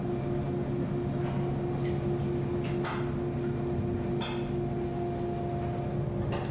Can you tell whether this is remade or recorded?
recorded